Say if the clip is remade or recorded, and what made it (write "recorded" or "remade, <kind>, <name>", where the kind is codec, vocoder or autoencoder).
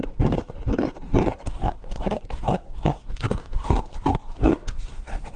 remade, codec, SNAC